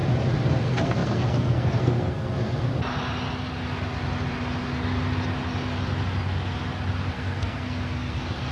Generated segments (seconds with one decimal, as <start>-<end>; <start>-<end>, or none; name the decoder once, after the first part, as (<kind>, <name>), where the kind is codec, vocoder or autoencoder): 0.6-2.7 (codec, SNAC); 7.1-8.5